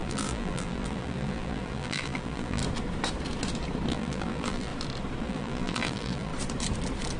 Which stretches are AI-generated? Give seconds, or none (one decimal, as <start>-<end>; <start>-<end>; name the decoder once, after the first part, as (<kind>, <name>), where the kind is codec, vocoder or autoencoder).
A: 0.0-2.6 (vocoder, BigVGAN v2); 3.9-4.7; 5.2-6.3

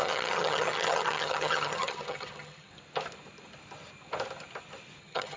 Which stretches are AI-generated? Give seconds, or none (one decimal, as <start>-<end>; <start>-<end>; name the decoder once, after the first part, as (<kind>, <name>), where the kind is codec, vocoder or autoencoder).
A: 0.0-2.7 (vocoder, HiFi-GAN); 5.0-5.4

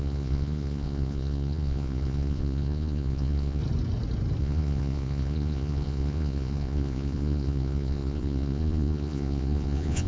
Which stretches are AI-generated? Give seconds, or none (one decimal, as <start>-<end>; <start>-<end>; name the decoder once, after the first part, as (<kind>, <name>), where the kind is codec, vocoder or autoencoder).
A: 0.0-3.6 (vocoder, Vocos); 4.4-10.1